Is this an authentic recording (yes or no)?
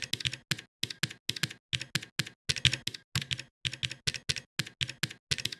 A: yes